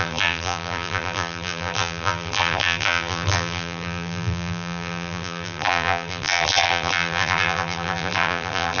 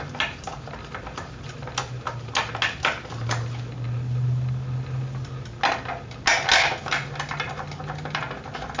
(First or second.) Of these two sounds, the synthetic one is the first